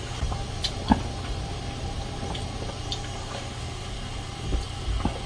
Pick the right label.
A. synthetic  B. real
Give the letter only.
B